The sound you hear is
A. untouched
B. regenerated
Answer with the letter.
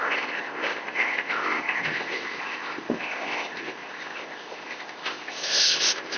B